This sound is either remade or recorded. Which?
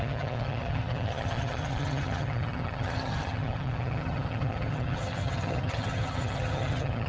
remade